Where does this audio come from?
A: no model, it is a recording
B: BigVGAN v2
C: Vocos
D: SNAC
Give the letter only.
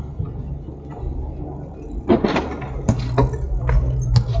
A